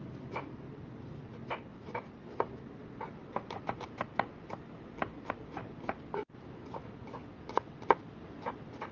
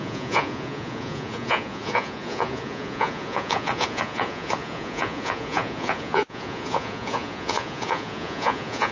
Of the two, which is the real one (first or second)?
first